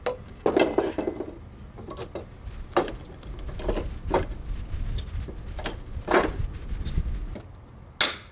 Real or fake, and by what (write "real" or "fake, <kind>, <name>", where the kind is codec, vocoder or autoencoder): real